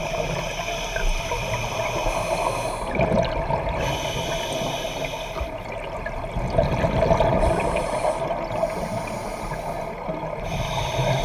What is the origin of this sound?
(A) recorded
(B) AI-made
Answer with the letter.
A